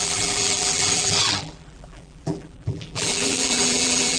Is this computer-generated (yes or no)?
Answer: yes